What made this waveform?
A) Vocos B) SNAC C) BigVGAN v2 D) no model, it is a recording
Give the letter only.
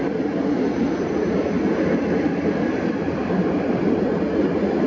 D